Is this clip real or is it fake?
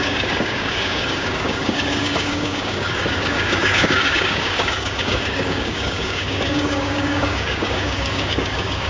fake